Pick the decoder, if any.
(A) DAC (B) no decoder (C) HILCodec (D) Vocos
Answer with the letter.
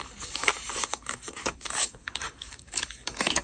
A